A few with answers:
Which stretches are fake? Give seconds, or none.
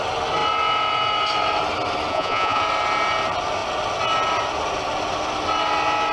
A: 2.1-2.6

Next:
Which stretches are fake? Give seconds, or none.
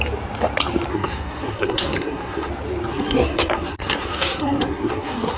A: 0.9-2.5; 2.9-5.4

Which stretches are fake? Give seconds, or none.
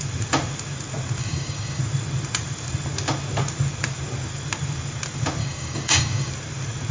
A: 1.2-1.8; 5.4-6.3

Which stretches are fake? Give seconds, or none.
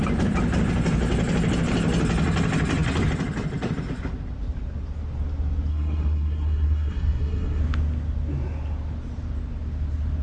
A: 5.7-7.6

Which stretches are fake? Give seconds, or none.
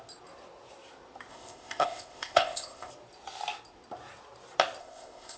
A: 1.3-2.9; 4.8-5.4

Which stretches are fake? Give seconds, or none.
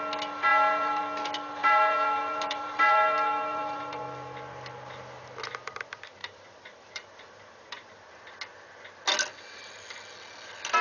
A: 0.5-1.0; 1.6-4.0; 6.2-8.1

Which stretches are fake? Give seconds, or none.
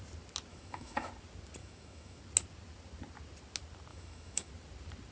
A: 0.5-1.1; 1.6-2.2; 3.9-4.5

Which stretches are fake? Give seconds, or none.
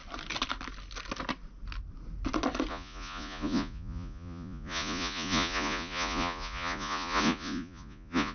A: 2.7-8.3